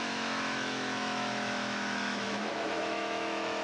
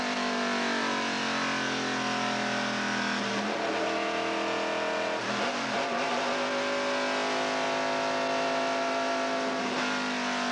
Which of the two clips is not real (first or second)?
first